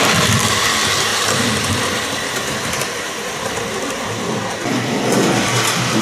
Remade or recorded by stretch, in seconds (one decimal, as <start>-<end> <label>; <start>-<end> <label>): 0.0-1.1 recorded; 1.1-4.3 remade; 4.3-6.0 recorded